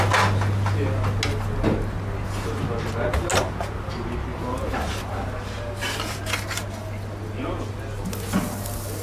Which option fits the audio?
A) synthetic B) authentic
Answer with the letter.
B